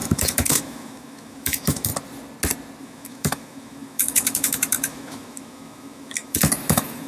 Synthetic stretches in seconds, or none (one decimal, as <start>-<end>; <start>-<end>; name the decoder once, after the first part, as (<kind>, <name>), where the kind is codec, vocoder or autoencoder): 0.0-1.9 (autoencoder, DAC-VAE); 2.8-7.1

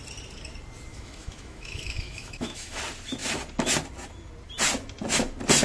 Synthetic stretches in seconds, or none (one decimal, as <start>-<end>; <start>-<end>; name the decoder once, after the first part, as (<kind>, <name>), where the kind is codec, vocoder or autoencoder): 0.9-2.8 (autoencoder, DAC-VAE)

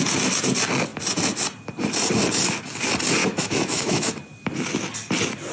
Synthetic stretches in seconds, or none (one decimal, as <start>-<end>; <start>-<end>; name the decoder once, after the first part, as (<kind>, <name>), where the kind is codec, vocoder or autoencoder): 3.2-4.1 (autoencoder, DAC-VAE)

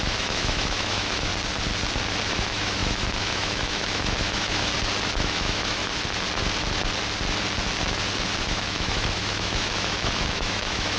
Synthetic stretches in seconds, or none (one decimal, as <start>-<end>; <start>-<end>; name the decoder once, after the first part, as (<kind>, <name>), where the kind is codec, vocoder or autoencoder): 0.0-1.3 (autoencoder, DAC-VAE); 2.3-4.7; 5.2-5.8; 8.4-11.0

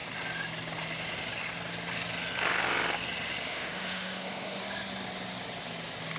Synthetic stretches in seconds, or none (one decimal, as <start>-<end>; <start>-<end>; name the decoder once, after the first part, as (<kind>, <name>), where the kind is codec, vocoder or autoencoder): 3.5-4.6 (autoencoder, DAC-VAE)